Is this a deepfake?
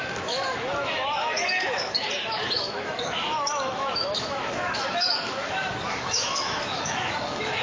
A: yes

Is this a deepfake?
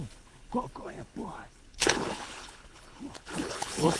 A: yes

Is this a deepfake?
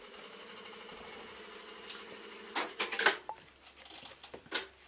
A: no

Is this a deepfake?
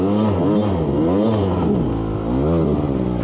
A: no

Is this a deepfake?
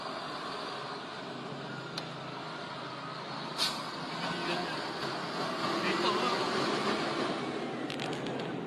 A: no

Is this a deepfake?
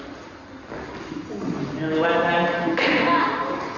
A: no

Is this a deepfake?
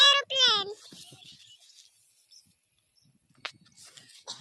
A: no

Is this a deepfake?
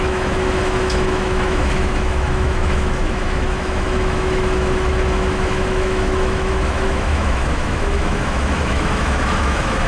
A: yes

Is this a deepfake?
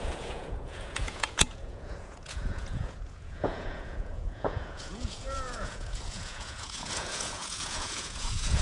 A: yes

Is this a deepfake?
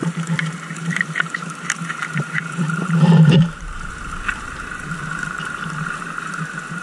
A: yes